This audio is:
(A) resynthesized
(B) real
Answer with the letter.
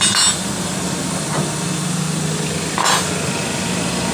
B